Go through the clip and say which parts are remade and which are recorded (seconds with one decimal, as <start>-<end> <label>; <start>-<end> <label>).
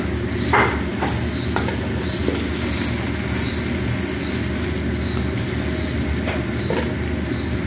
0.0-7.7 recorded